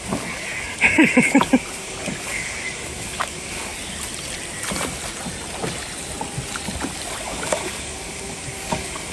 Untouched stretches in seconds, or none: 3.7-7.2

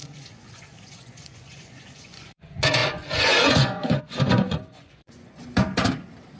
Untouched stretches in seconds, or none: 5.4-6.4

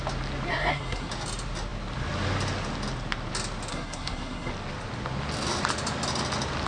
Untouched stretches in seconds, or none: 0.0-0.5; 1.1-3.7; 4.5-6.7

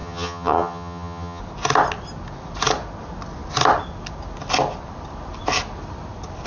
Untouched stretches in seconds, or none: 1.4-6.5